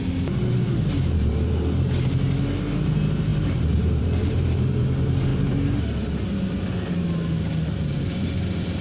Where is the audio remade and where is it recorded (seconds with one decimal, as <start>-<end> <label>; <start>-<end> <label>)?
0.0-3.3 recorded; 3.3-4.8 remade; 4.8-5.3 recorded; 5.3-5.8 remade; 5.8-8.8 recorded